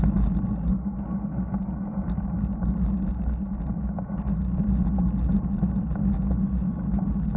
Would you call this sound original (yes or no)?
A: yes